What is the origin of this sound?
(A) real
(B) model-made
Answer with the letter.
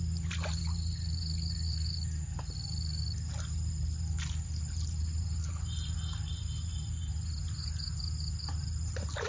A